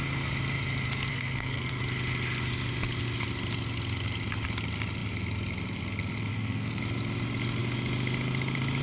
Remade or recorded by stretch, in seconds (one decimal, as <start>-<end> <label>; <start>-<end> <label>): 0.0-1.1 recorded; 1.1-1.8 remade; 1.8-6.3 recorded; 6.3-6.8 remade; 6.8-8.8 recorded